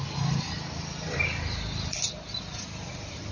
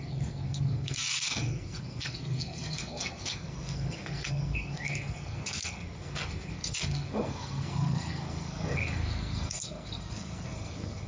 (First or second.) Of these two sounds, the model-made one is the second